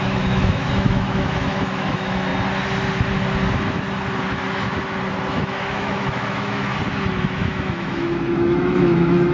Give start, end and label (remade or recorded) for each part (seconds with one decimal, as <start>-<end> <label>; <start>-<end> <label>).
0.0-2.3 remade; 2.3-5.3 recorded; 5.3-6.7 remade; 6.7-7.2 recorded; 7.2-9.3 remade

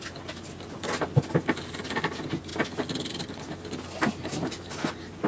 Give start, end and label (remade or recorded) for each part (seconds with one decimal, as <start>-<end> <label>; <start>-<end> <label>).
0.0-5.3 recorded

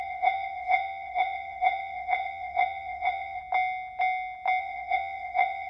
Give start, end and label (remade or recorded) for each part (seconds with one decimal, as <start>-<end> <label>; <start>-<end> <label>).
0.0-3.4 remade; 3.4-4.6 recorded; 4.6-5.7 remade

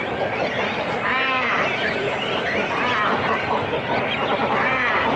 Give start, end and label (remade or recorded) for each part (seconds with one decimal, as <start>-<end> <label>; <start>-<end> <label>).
0.0-5.2 recorded

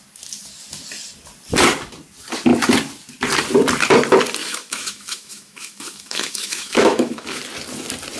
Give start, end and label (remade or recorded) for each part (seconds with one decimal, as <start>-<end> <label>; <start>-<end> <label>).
0.0-4.4 recorded; 4.4-7.4 remade; 7.4-8.2 recorded

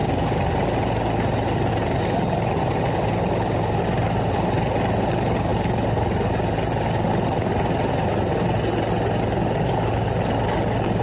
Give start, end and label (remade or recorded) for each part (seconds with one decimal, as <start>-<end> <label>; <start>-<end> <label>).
0.0-11.0 recorded

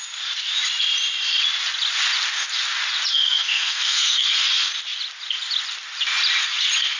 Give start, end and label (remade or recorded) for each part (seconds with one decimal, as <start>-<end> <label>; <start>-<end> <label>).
0.0-3.1 recorded; 3.1-4.3 remade; 4.3-7.0 recorded

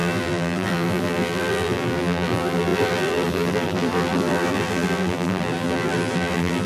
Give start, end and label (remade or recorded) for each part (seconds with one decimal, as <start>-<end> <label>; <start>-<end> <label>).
0.0-6.7 remade